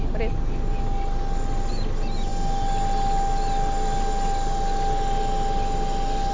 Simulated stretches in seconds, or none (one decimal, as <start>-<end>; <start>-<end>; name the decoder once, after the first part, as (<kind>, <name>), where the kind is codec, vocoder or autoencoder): none